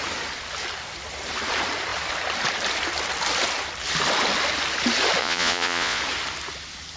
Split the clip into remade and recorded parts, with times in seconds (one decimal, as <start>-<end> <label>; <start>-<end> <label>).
0.0-5.2 recorded; 5.2-6.0 remade; 6.0-7.0 recorded